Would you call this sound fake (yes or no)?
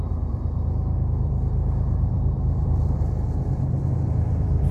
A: yes